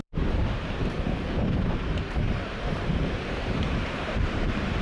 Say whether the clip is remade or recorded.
remade